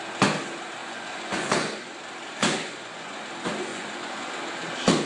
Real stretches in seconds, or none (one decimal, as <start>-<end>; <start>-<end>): 0.0-0.8; 1.9-2.4; 3.2-3.7; 4.3-5.1

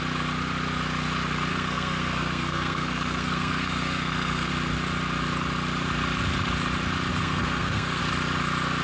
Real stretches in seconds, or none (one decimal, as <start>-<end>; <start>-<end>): 0.0-1.5; 4.5-7.1; 8.0-8.8

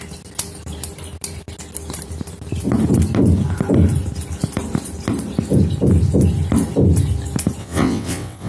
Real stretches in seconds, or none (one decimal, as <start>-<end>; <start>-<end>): 0.0-7.6

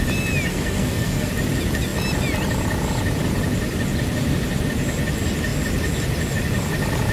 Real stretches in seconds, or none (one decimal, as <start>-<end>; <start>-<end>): 0.0-0.5; 1.3-7.1

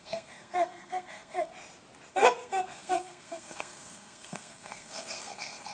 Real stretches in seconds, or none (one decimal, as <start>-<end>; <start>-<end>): 1.5-2.1